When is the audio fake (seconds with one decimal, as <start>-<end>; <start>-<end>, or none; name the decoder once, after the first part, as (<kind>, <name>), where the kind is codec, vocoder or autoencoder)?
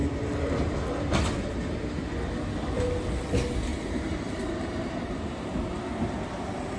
0.0-1.2 (vocoder, BigVGAN v2); 3.7-5.5